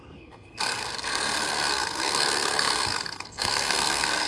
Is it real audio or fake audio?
fake